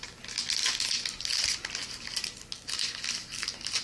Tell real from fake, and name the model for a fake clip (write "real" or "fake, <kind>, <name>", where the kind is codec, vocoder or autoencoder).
real